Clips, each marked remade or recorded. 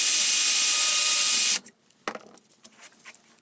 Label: recorded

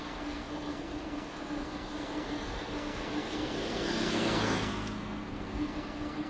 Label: remade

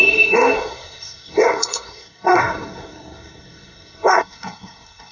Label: remade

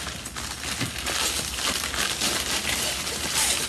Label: recorded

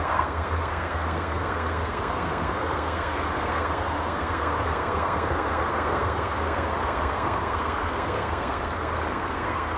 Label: remade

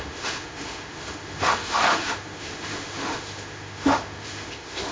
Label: remade